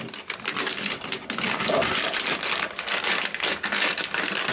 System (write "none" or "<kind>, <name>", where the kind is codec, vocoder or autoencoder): none